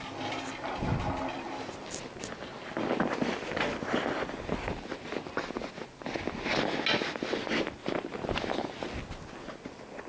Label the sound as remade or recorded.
recorded